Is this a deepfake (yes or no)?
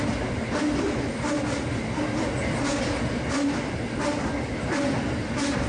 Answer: no